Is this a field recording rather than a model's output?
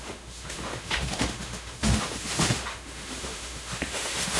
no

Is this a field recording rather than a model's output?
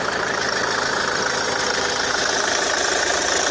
yes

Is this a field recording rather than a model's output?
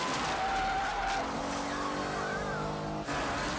yes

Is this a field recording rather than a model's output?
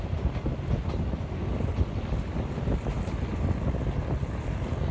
yes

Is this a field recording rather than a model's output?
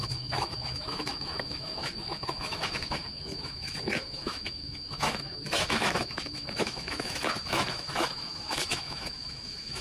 no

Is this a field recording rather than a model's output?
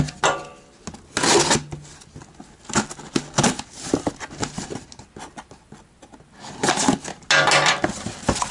yes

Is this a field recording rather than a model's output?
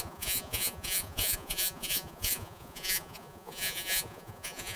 no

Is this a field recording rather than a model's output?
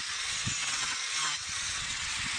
no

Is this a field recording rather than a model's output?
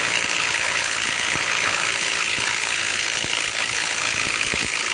no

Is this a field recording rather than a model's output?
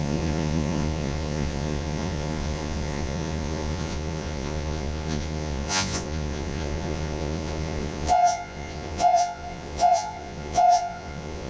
no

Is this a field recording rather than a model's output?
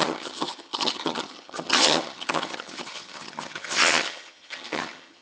no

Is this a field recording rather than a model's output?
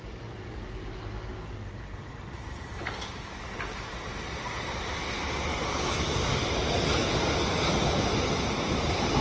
yes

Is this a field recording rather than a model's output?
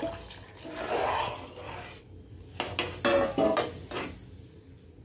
yes